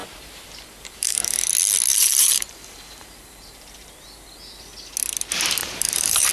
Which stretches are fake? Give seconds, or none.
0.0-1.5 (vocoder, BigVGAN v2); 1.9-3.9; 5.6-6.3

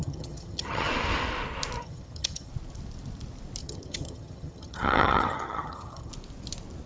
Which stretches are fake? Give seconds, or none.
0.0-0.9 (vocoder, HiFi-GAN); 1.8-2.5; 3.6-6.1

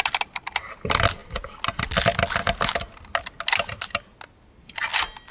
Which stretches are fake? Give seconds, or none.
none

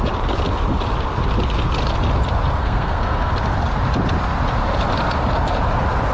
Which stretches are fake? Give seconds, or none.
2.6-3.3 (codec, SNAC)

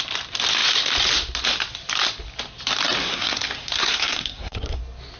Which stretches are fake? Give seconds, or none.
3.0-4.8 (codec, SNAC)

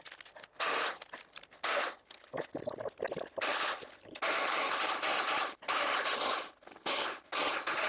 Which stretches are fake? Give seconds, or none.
none

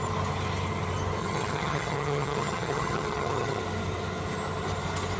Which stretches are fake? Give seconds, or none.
1.2-3.6 (vocoder, HiFi-GAN)

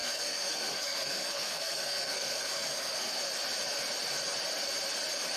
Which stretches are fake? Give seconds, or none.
0.0-3.2 (codec, SNAC)